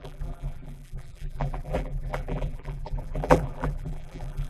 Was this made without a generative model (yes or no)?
no